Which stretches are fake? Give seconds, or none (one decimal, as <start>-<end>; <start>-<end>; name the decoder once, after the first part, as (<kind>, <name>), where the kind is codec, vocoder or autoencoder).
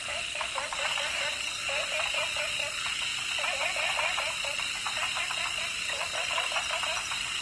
0.0-7.4 (vocoder, BigVGAN v2)